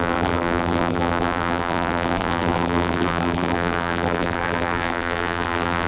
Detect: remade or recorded remade